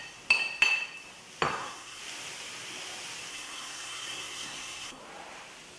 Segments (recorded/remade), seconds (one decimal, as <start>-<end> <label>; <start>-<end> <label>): 0.0-1.5 recorded; 1.5-2.0 remade; 2.0-3.3 recorded; 3.3-5.0 remade; 5.0-5.8 recorded